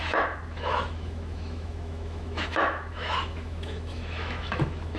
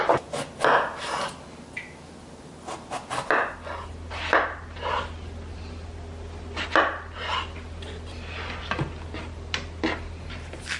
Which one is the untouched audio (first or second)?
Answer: second